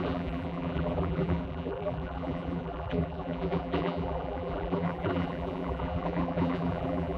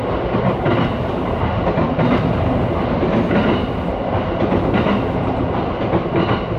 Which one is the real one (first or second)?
second